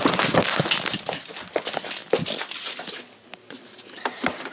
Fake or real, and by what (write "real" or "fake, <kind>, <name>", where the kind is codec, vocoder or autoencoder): real